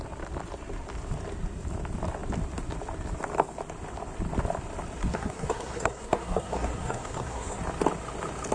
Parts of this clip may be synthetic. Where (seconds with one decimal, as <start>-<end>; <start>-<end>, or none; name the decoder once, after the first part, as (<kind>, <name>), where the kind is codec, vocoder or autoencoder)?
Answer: 5.1-7.6 (codec, SNAC)